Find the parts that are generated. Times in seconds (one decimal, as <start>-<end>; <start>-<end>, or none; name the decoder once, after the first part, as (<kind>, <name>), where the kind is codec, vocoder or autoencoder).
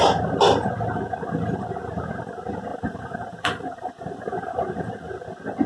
2.7-4.9 (vocoder, BigVGAN v2)